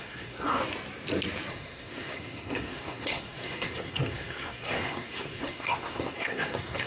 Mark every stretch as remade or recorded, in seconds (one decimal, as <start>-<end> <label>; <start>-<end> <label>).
0.0-0.6 remade; 0.6-1.5 recorded; 1.5-6.9 remade

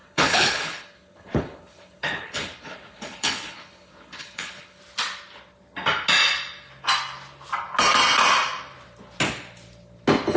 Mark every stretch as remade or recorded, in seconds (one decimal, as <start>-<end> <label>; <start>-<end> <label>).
0.0-4.8 remade; 4.8-10.4 recorded